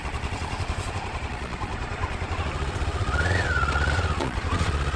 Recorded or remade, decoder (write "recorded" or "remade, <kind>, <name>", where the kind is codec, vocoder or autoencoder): remade, vocoder, Vocos